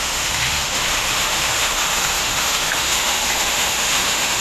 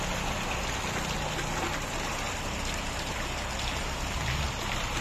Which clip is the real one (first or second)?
second